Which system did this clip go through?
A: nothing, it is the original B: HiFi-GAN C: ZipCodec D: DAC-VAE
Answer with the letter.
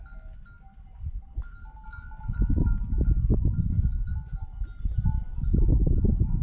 A